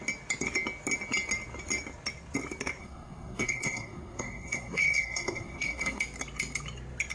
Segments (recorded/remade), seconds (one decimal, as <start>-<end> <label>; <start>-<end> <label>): 0.0-2.8 recorded; 2.8-6.0 remade; 6.0-7.1 recorded